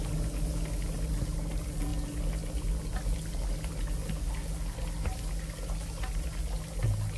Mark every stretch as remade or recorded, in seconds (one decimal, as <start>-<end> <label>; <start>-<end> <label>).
0.0-7.2 recorded